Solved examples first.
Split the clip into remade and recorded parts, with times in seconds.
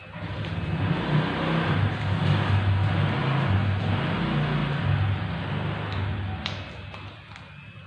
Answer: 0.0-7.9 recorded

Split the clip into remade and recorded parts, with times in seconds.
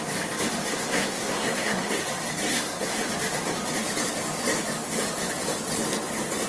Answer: 0.0-0.7 recorded; 0.7-2.0 remade; 2.0-2.5 recorded; 2.5-3.0 remade; 3.0-6.5 recorded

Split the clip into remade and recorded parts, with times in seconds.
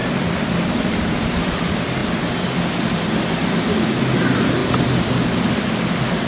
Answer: 0.0-1.6 remade; 1.6-6.3 recorded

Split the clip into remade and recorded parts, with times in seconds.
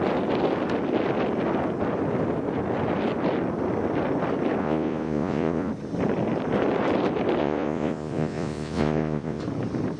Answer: 0.0-4.6 recorded; 4.6-5.7 remade; 5.7-7.4 recorded; 7.4-9.4 remade; 9.4-10.0 recorded